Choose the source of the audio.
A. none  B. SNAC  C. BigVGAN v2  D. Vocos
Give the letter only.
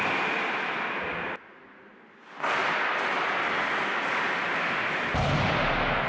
A